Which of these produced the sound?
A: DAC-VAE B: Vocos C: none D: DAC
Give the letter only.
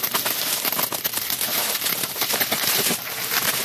C